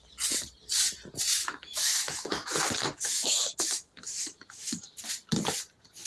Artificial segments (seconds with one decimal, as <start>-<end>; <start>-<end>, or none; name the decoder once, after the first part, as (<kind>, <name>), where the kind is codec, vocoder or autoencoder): 1.3-5.0 (autoencoder, DAC-VAE)